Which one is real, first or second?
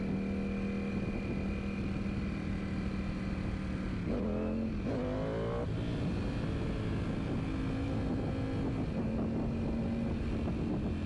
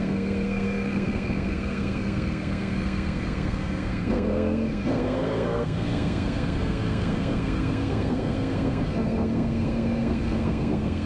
first